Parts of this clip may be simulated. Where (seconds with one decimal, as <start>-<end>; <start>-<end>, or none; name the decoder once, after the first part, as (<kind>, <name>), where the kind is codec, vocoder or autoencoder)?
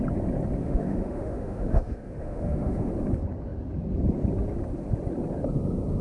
0.6-2.9 (autoencoder, DAC-VAE)